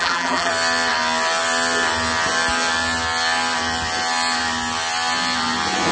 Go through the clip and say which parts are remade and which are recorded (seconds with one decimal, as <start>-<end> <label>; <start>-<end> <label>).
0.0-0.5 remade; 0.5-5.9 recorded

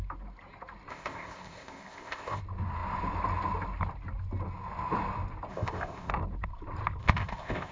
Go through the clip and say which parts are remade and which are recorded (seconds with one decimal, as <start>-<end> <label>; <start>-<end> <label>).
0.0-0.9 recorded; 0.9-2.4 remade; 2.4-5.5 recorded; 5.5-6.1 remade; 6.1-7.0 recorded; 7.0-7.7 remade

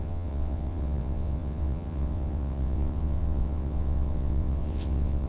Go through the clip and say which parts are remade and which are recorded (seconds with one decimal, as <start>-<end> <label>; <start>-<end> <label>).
0.0-5.3 remade

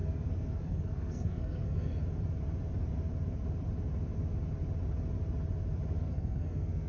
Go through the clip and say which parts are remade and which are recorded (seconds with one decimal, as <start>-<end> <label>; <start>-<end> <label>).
0.0-1.9 remade; 1.9-6.0 recorded; 6.0-6.9 remade